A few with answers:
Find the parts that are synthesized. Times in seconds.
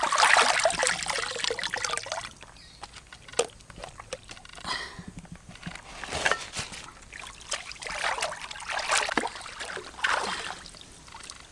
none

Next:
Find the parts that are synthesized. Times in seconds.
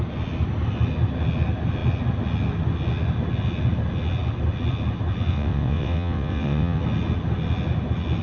5.3-6.8 (vocoder, WaveNeXt)